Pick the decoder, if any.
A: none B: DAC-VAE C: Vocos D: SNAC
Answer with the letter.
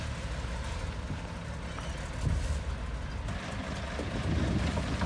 A